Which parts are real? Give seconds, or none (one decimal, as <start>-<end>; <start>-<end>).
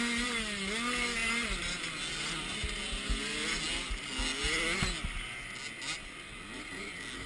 0.0-7.3